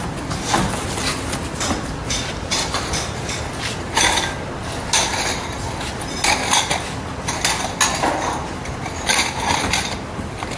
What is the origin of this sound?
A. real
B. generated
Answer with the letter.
A